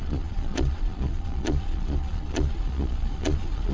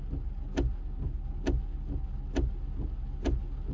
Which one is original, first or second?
second